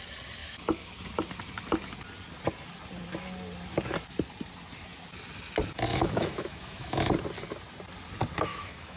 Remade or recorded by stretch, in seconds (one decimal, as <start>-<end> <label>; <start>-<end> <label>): 0.0-0.4 recorded; 0.4-0.9 remade; 0.9-5.9 recorded; 5.9-7.1 remade; 7.1-8.5 recorded; 8.5-9.0 remade